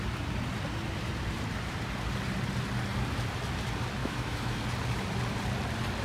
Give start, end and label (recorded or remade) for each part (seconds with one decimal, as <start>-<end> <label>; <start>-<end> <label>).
0.0-4.0 recorded; 4.0-4.6 remade; 4.6-6.0 recorded